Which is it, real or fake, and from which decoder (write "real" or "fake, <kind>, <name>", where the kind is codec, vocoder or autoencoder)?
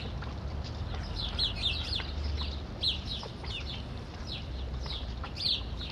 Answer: real